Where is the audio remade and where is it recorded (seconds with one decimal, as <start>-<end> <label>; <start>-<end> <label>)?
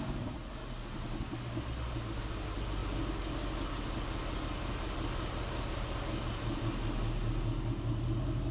0.0-8.5 recorded